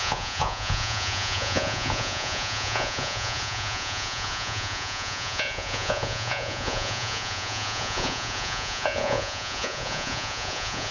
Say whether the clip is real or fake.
fake